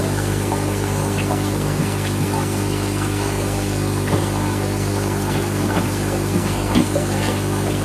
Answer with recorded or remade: remade